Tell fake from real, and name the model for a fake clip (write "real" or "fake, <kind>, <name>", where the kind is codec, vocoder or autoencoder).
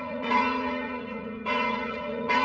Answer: fake, vocoder, Vocos